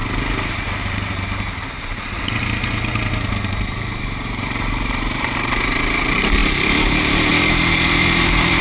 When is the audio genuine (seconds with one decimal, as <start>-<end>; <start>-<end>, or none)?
0.0-0.8

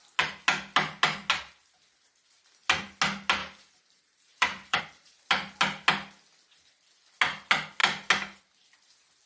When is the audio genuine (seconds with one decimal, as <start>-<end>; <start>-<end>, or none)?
0.0-3.4; 4.8-9.3

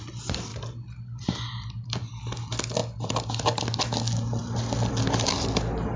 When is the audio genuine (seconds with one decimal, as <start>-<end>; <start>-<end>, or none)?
0.0-4.4; 5.4-6.0